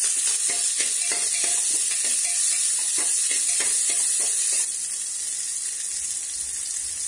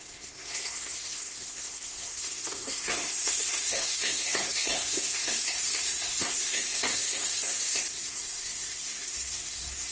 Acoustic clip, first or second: first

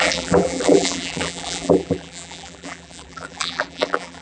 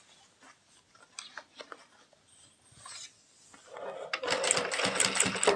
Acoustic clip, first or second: second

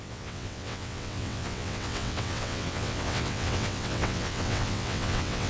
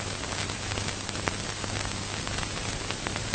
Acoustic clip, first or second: second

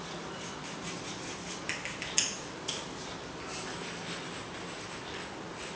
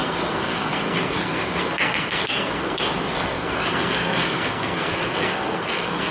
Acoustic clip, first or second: first